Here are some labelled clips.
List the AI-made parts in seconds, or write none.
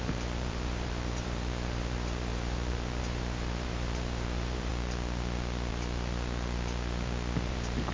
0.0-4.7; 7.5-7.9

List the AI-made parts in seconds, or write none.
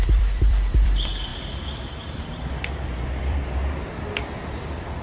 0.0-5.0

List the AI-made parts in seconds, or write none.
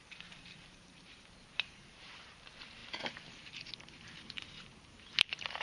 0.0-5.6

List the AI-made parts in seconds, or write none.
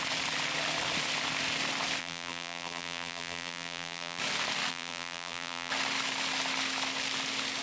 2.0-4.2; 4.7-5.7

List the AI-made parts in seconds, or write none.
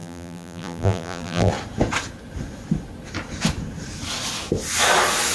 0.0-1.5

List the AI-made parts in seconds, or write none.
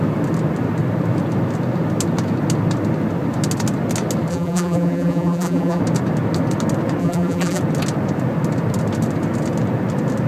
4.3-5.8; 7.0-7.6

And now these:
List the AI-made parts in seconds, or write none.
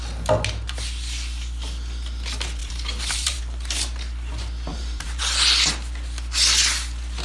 2.6-3.4; 4.7-5.2